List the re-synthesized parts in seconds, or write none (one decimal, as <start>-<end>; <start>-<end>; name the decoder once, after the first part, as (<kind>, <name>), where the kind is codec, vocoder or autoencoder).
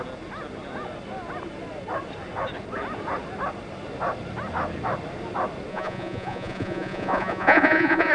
5.7-8.1 (vocoder, Vocos)